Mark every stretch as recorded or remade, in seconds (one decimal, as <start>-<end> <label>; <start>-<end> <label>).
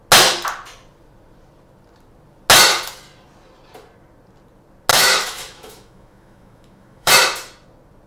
0.0-4.9 recorded; 4.9-7.1 remade; 7.1-8.1 recorded